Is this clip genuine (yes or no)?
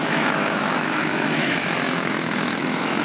no